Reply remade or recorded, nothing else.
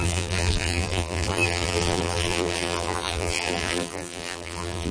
remade